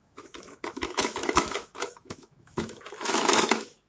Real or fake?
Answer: fake